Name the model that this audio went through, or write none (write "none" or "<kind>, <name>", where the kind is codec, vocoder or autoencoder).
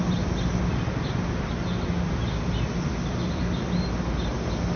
none